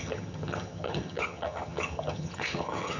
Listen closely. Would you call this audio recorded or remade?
remade